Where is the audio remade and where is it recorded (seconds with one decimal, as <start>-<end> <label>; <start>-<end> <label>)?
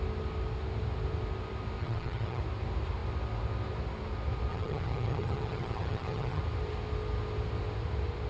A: 0.0-1.8 recorded; 1.8-2.4 remade; 2.4-4.5 recorded; 4.5-6.4 remade; 6.4-8.3 recorded